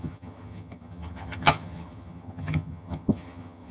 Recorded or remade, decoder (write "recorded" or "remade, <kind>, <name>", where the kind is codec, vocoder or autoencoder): remade, vocoder, HiFi-GAN